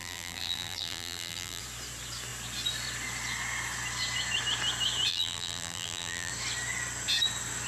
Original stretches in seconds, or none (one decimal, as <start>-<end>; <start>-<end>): 1.6-5.1; 6.3-7.7